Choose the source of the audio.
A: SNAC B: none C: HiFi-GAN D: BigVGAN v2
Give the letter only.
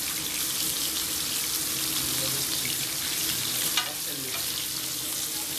B